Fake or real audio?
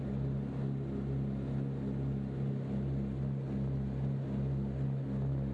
real